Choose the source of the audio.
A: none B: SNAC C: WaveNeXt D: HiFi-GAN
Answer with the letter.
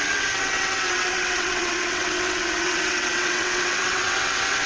C